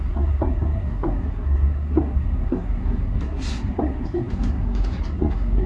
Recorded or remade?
remade